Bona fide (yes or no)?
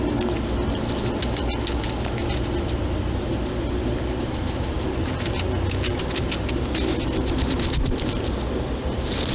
yes